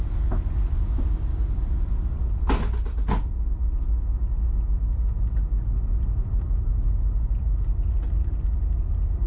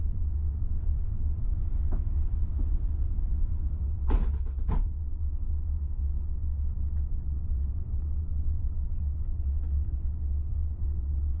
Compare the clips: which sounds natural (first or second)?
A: first